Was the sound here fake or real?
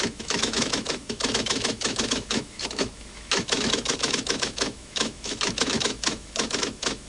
fake